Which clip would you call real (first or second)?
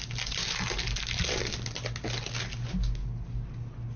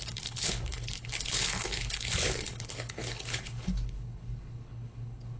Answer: first